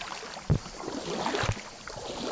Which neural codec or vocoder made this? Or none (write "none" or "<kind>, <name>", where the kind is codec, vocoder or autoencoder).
none